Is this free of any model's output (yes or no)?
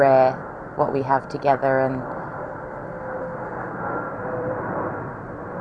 no